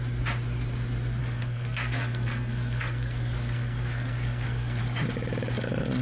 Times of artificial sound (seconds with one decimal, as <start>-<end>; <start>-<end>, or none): 1.2-4.8